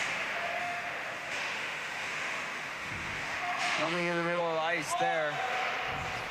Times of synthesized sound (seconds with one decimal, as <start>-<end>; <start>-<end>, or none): 0.6-4.4